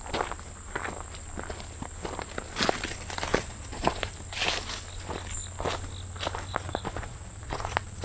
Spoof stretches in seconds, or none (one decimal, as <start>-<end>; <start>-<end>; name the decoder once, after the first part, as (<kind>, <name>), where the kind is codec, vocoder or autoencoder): 3.3-4.1 (vocoder, Vocos); 6.5-8.0